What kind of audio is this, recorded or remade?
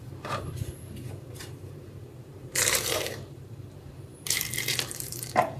remade